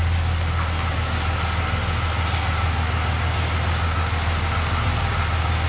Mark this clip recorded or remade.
recorded